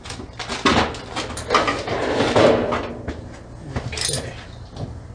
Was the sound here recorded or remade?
recorded